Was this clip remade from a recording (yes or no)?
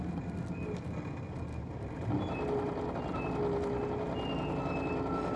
no